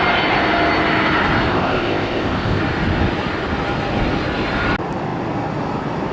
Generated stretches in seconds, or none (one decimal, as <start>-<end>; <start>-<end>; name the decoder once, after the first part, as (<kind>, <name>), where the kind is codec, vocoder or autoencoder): 1.5-2.6 (codec, ZipCodec)